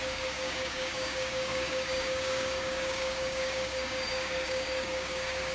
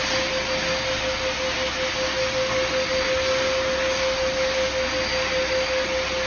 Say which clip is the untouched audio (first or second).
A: second